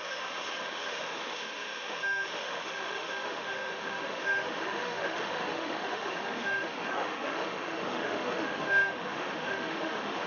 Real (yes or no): no